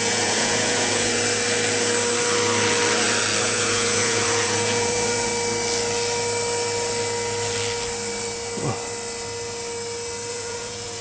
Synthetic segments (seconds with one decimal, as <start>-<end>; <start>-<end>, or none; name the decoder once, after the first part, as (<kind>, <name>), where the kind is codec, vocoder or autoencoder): 0.0-1.1 (vocoder, Vocos); 3.4-5.3; 10.3-11.0